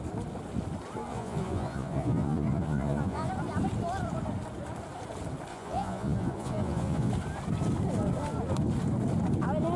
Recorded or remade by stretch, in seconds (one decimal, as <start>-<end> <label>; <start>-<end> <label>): 0.0-1.1 recorded; 1.1-3.3 remade; 3.3-5.5 recorded; 5.5-7.1 remade; 7.1-9.8 recorded

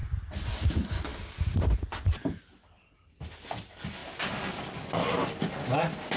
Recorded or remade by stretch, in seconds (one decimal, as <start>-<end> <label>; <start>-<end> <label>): 0.0-6.2 recorded